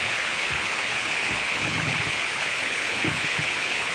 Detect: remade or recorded remade